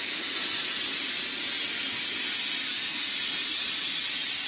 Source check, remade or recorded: recorded